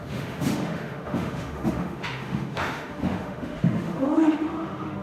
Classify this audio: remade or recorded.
remade